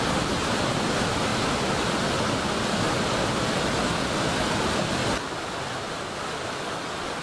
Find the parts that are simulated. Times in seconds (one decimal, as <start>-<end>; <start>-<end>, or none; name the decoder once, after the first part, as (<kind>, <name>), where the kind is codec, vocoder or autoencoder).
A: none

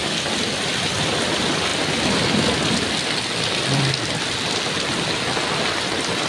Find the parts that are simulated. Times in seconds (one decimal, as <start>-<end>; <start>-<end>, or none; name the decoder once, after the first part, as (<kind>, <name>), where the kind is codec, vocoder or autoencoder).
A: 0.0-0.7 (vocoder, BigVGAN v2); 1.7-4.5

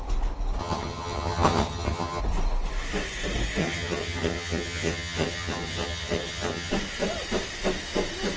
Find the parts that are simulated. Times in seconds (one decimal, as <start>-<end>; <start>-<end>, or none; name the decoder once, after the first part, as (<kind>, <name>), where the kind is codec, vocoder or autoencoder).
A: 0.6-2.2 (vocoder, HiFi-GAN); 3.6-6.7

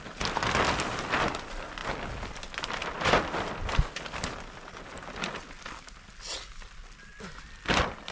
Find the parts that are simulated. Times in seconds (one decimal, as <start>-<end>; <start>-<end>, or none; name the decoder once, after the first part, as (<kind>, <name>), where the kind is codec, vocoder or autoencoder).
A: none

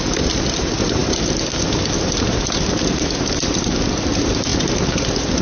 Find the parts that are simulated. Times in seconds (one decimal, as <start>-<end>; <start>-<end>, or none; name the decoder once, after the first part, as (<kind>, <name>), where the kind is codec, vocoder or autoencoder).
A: none